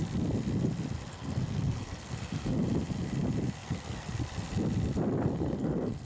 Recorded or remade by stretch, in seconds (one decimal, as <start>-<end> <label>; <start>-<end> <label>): 0.0-1.1 recorded; 1.1-2.6 remade; 2.6-3.6 recorded; 3.6-4.1 remade; 4.1-5.3 recorded; 5.3-6.1 remade